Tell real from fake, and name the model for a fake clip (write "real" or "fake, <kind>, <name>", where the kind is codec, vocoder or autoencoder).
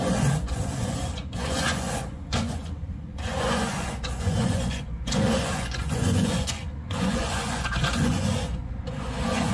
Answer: fake, vocoder, Vocos